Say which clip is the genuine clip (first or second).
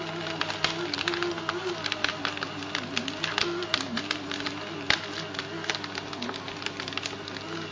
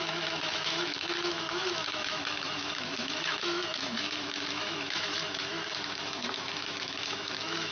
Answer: first